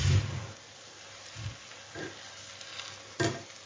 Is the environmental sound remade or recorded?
recorded